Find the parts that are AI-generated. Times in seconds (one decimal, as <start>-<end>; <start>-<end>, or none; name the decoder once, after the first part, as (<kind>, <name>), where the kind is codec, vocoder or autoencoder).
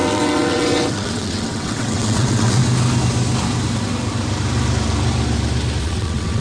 0.0-2.6 (vocoder, WaveNeXt); 5.8-6.4